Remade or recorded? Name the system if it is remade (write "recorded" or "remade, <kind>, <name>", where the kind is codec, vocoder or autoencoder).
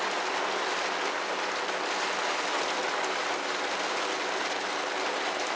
recorded